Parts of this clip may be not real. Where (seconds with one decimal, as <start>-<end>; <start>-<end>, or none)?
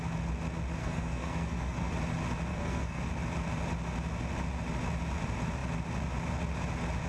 0.8-1.9; 2.5-3.0